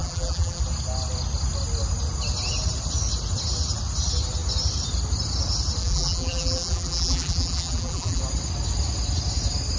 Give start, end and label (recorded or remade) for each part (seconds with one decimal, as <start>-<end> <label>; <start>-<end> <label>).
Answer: 0.0-0.6 remade; 0.6-5.8 recorded; 5.8-8.2 remade; 8.2-9.8 recorded